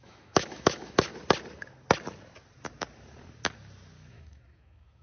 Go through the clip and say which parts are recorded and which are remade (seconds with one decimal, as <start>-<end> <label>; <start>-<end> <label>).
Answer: 0.0-1.1 remade; 1.1-4.1 recorded; 4.1-5.0 remade